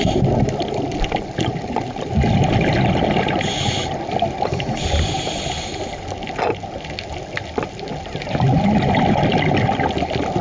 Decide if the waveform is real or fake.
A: real